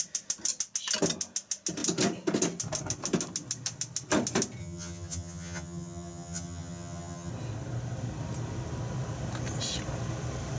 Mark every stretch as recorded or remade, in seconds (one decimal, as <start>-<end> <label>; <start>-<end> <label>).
0.0-4.6 recorded; 4.6-7.3 remade; 7.3-10.6 recorded

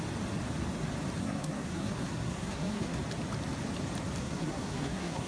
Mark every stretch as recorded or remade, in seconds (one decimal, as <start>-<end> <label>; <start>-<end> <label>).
0.0-1.2 recorded; 1.2-3.0 remade; 3.0-4.2 recorded; 4.2-5.3 remade

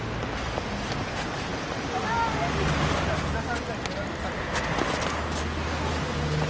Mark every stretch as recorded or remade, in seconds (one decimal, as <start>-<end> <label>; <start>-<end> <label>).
0.0-6.5 recorded